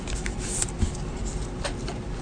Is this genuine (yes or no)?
yes